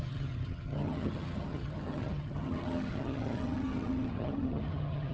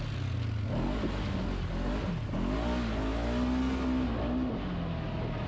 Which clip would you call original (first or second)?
second